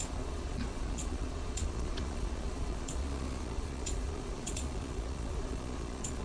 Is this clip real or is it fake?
fake